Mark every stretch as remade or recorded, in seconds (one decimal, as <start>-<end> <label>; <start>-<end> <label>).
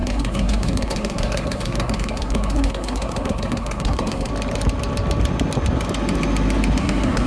0.0-4.3 remade; 4.3-6.8 recorded; 6.8-7.3 remade